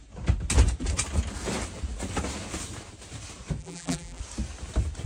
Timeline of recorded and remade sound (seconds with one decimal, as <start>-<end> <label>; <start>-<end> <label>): 0.0-3.6 recorded; 3.6-4.2 remade; 4.2-5.1 recorded

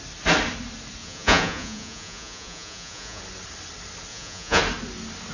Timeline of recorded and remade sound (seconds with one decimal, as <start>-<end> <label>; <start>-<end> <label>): 0.0-1.0 recorded; 1.0-3.2 remade; 3.2-4.1 recorded; 4.1-4.6 remade; 4.6-5.3 recorded